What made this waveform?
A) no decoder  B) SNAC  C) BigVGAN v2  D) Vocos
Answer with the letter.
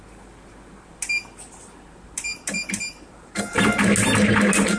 A